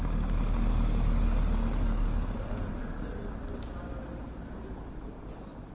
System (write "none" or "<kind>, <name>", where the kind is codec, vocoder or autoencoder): none